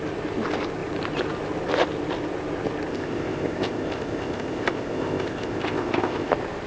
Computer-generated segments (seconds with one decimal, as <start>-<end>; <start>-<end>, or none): 2.9-6.3